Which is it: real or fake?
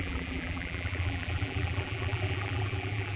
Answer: fake